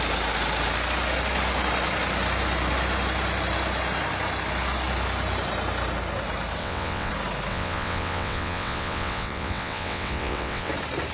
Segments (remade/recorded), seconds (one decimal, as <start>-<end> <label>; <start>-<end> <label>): 0.0-6.6 recorded; 6.6-7.1 remade; 7.1-7.5 recorded; 7.5-10.7 remade; 10.7-11.1 recorded